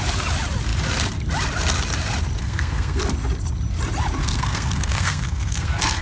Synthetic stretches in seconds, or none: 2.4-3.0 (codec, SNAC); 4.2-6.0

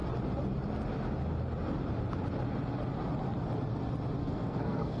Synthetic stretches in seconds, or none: 4.2-5.0 (codec, SNAC)

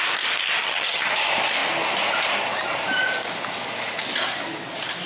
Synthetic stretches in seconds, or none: 0.6-1.1 (vocoder, HiFi-GAN)

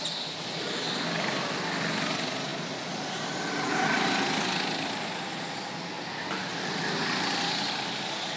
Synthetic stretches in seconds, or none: none

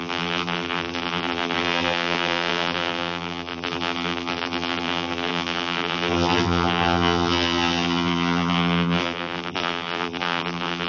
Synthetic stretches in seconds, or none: 0.0-10.9 (vocoder, BigVGAN v2)